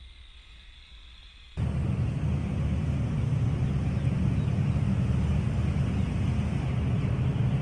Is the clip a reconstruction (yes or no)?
no